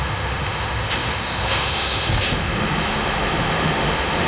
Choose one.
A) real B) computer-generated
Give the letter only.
B